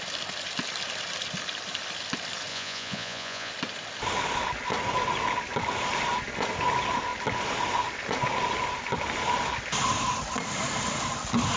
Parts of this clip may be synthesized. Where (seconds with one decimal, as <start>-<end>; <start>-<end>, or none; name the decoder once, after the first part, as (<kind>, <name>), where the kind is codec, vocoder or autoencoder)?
2.5-3.5 (vocoder, Vocos)